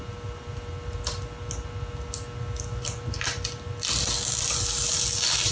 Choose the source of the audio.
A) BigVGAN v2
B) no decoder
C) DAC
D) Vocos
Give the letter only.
B